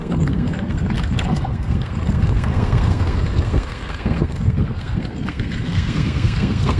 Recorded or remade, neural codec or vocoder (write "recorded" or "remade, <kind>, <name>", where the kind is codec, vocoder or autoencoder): remade, codec, SNAC